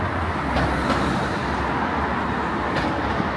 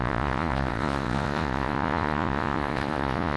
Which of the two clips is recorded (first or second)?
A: first